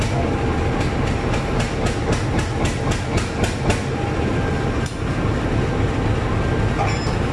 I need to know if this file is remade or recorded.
recorded